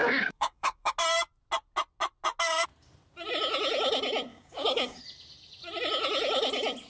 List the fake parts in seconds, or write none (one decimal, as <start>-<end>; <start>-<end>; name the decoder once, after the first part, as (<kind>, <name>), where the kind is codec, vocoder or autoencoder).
0.0-0.9 (codec, DAC); 4.3-5.0